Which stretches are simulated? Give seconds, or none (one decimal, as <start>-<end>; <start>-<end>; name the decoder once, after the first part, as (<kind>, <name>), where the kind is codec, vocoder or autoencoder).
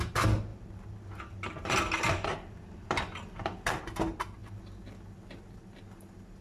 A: 0.5-3.8 (vocoder, BigVGAN v2); 4.4-5.3